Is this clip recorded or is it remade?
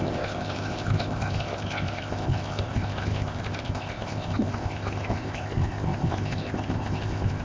remade